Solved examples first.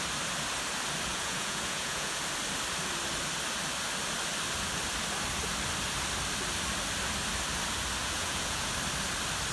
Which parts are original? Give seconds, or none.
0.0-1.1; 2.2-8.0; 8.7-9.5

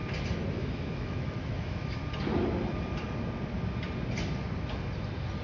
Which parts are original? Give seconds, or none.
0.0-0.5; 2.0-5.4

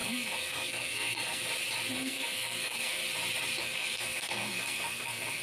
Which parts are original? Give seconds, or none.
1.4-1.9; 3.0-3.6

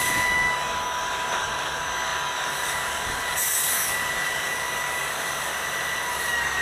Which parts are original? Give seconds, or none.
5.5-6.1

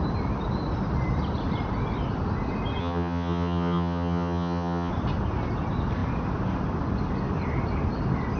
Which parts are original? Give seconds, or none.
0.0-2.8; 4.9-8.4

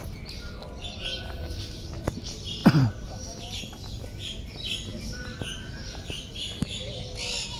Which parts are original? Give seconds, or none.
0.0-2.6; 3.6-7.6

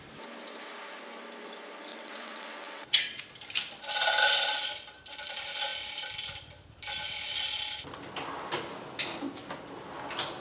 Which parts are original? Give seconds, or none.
0.0-1.9; 3.2-10.4

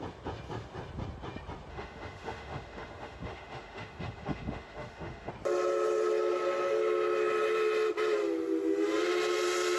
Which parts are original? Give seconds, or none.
0.0-1.7; 5.3-9.8